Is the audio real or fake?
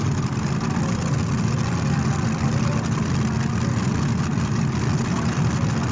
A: real